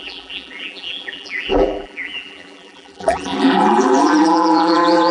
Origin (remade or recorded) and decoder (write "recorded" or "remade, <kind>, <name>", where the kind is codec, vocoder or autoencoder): remade, vocoder, BigVGAN v2